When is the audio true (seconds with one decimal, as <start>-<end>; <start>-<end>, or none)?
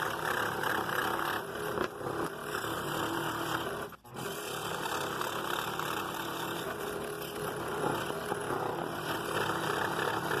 0.0-10.4